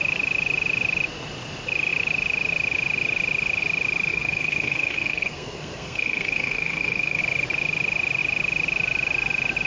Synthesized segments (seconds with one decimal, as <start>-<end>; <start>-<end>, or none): 4.1-7.2